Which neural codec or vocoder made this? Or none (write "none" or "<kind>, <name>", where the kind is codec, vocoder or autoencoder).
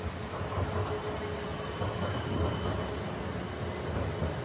none